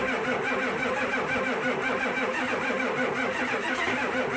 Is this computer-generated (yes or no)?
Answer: no